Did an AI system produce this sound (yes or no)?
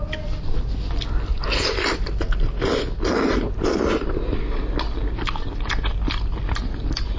no